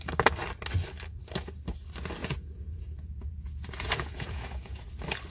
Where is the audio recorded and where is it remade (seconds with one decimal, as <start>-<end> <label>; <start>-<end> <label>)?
0.0-2.2 recorded; 2.2-4.8 remade; 4.8-5.3 recorded